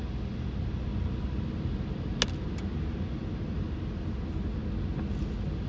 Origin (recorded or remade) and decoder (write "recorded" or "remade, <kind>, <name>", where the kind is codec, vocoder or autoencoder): recorded